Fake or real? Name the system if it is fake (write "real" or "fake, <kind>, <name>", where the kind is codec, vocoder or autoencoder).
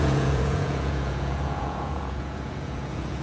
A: fake, vocoder, Vocos